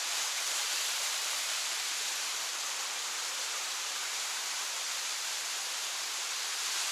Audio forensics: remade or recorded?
remade